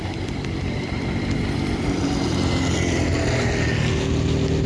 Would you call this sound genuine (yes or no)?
yes